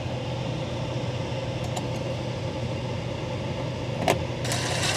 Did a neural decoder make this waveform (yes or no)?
no